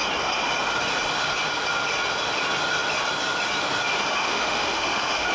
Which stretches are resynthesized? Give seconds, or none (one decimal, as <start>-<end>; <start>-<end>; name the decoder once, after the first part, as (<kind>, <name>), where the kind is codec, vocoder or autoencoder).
4.2-5.3 (autoencoder, DAC-VAE)